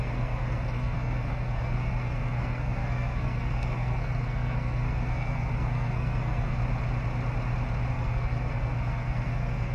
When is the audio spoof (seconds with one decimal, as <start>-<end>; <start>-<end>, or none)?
0.0-6.6; 7.9-9.7